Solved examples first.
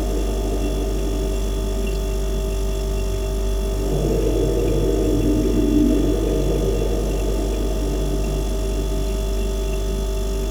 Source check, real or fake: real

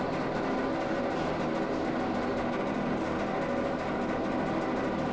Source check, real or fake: real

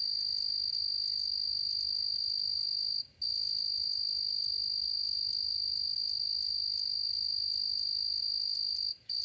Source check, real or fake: real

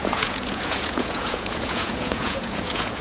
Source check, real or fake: fake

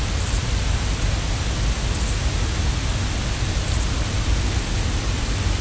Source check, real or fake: real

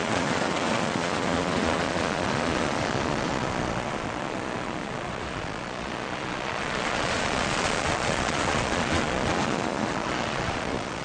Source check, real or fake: fake